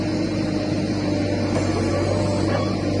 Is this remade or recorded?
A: recorded